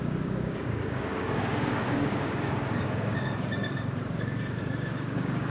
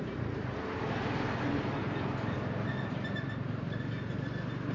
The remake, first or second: first